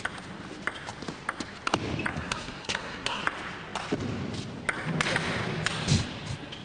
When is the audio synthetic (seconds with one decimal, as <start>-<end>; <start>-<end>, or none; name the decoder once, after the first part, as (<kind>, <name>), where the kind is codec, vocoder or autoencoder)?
2.1-3.2 (codec, SNAC)